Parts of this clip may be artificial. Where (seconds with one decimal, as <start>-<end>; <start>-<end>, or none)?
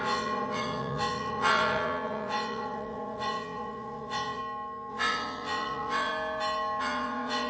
0.0-4.4; 4.9-6.1; 6.8-7.5